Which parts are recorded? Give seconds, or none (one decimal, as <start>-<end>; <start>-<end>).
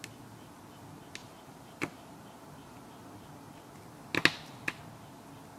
0.0-1.2; 3.8-5.6